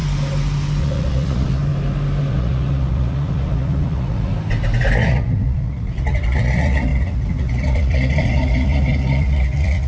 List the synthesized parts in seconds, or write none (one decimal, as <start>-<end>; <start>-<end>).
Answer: 0.8-1.6; 2.3-4.3; 5.1-9.9